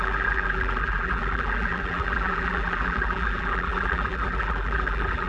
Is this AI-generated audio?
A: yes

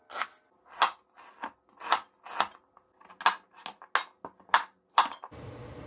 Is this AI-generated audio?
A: no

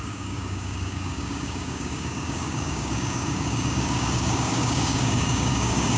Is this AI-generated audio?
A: yes